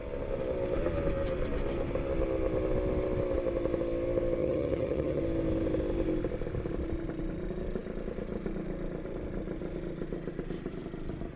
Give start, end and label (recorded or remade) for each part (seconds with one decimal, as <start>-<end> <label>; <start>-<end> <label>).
0.0-4.4 recorded; 4.4-5.2 remade; 5.2-11.4 recorded